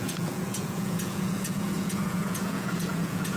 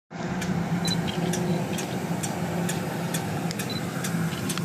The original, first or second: second